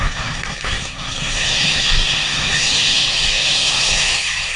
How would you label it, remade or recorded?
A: remade